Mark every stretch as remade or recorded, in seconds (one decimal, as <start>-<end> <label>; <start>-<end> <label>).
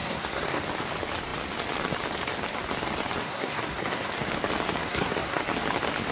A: 0.0-0.6 remade; 0.6-3.2 recorded; 3.2-4.1 remade; 4.1-4.8 recorded; 4.8-5.4 remade; 5.4-6.1 recorded